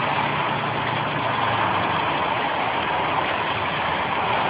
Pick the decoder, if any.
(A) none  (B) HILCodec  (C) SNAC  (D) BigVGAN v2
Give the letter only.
A